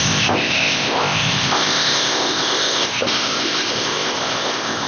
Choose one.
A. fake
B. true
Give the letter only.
A